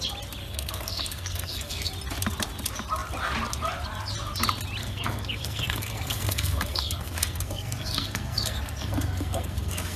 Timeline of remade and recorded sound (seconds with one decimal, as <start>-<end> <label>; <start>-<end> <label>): 0.0-0.4 recorded; 0.4-1.9 remade; 1.9-4.8 recorded; 4.8-10.0 remade